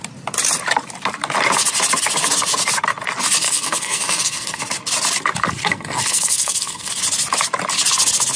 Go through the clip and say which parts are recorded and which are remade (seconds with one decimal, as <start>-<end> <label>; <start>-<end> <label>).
0.0-3.4 recorded; 3.4-4.6 remade; 4.6-5.6 recorded; 5.6-6.9 remade; 6.9-8.4 recorded